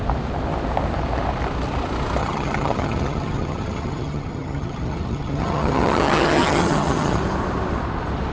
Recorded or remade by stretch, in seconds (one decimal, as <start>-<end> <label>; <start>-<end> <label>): 0.0-2.2 recorded; 2.2-7.2 remade; 7.2-8.3 recorded